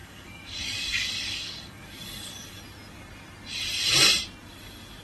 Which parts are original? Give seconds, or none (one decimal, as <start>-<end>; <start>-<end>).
2.6-5.0